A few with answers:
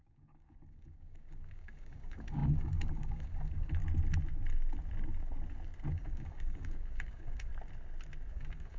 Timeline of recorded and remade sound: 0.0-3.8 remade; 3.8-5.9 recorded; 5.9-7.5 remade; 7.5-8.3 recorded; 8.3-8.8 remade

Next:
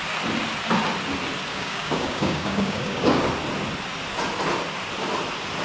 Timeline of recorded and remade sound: 0.0-1.5 recorded; 1.5-3.3 remade; 3.3-5.6 recorded

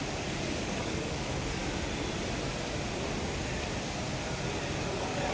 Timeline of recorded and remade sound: 0.0-1.6 remade; 1.6-4.8 recorded; 4.8-5.3 remade

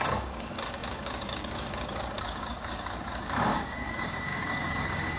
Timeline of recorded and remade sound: 0.0-5.2 remade

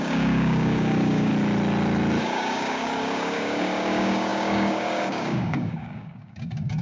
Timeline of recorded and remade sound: 0.0-1.3 remade; 1.3-2.2 recorded; 2.2-6.8 remade

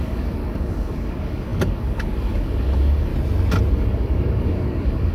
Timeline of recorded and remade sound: 0.0-3.1 remade; 3.1-3.7 recorded; 3.7-5.1 remade